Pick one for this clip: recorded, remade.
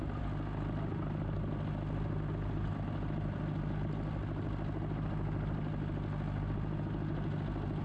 recorded